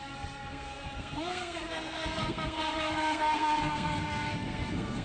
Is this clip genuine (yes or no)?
no